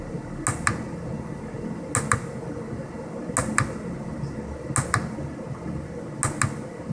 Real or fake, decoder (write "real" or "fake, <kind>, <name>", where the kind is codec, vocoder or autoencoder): real